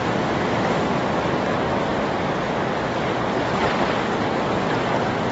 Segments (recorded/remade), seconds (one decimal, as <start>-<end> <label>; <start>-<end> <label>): 0.0-5.3 recorded